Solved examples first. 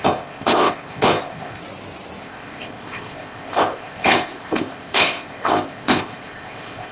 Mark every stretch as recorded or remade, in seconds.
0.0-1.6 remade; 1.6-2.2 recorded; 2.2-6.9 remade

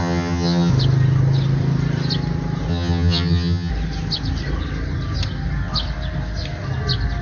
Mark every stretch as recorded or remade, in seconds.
0.0-0.7 remade; 0.7-2.7 recorded; 2.7-3.7 remade; 3.7-7.2 recorded

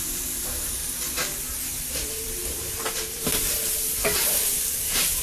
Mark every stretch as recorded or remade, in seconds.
0.0-0.8 remade; 0.8-1.4 recorded; 1.4-3.6 remade; 3.6-4.7 recorded; 4.7-5.2 remade

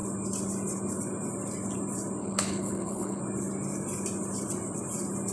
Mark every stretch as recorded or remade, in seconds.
0.0-2.2 recorded; 2.2-3.2 remade; 3.2-5.3 recorded

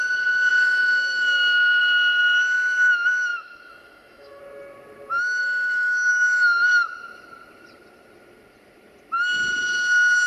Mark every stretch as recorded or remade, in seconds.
0.0-0.5 recorded; 0.5-1.8 remade; 1.8-3.3 recorded; 3.3-4.4 remade; 4.4-5.4 recorded; 5.4-6.1 remade; 6.1-10.3 recorded